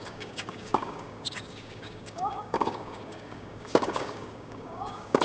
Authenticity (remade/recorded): remade